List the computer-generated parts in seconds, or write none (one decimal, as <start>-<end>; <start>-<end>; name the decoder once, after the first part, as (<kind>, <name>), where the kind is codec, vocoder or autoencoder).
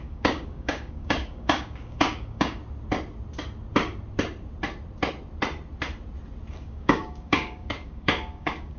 0.0-2.6 (codec, DAC); 6.5-8.8